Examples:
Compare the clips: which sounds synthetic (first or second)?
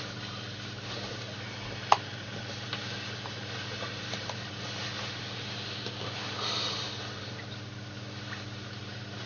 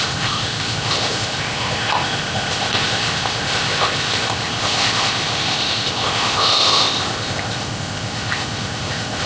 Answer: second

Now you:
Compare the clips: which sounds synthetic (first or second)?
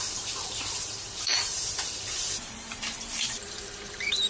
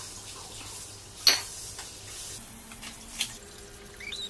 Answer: first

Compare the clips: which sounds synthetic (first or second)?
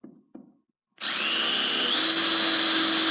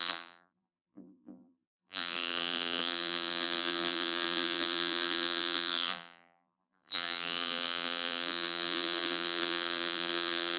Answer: second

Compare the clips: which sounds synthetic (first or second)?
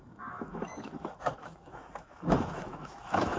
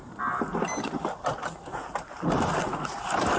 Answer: first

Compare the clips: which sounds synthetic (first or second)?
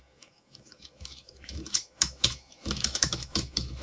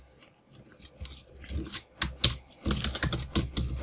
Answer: first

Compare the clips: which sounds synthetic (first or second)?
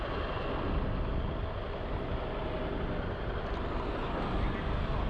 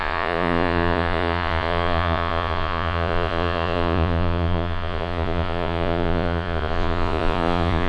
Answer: second